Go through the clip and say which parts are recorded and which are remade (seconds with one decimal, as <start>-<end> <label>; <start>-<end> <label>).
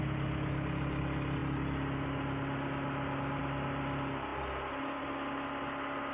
0.0-6.1 recorded